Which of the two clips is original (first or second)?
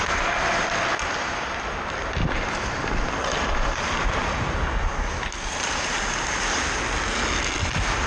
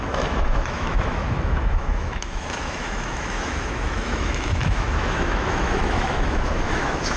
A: first